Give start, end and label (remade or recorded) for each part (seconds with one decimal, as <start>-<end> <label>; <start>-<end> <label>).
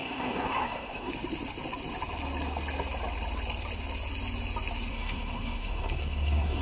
0.0-1.1 remade; 1.1-4.9 recorded; 4.9-6.6 remade